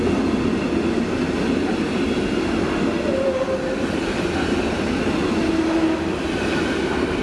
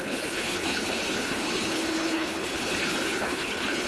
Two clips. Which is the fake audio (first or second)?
second